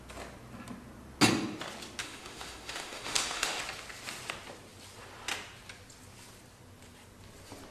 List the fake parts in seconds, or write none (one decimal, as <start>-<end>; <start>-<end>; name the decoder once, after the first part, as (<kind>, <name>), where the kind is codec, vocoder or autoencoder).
2.0-3.6 (autoencoder, DAC-VAE)